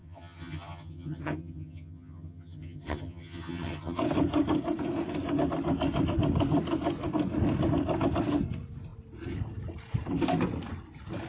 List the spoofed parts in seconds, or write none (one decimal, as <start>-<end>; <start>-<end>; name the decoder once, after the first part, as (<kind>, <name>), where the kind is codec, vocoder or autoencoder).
0.0-4.0 (vocoder, HiFi-GAN)